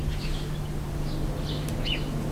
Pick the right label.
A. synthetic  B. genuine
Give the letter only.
B